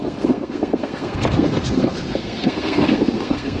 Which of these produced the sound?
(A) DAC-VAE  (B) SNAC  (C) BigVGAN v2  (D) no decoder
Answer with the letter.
B